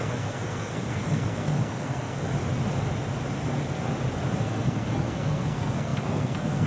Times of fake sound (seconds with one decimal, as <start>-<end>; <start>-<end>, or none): 0.0-2.3; 4.4-6.7